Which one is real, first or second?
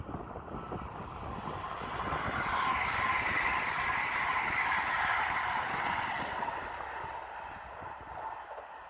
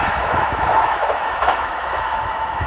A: first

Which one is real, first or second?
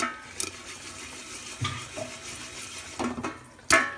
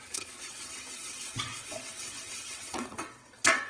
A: first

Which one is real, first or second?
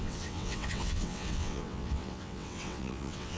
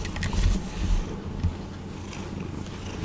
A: second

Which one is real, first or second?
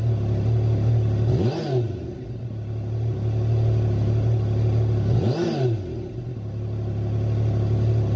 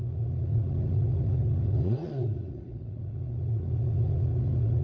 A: first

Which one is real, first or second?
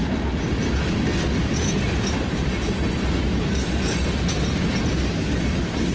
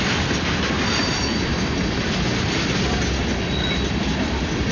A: first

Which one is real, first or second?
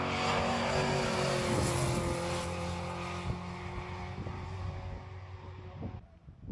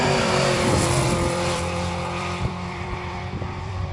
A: first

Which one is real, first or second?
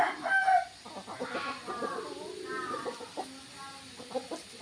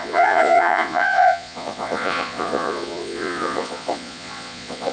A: first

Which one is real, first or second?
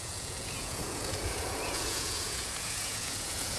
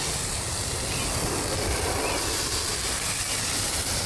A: second